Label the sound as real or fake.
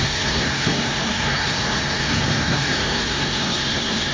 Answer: fake